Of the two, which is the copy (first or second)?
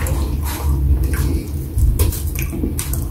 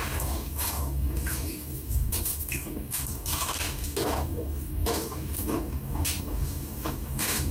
second